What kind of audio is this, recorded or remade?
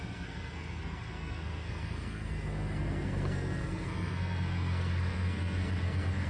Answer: remade